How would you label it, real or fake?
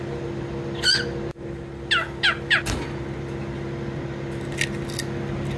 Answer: real